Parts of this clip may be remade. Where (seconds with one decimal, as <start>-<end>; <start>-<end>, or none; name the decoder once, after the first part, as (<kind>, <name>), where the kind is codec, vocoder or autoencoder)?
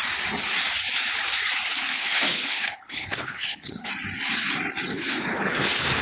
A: 1.9-3.9 (codec, HILCodec); 4.9-6.0